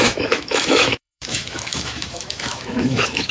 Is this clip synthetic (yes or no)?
yes